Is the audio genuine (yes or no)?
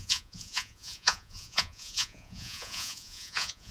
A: no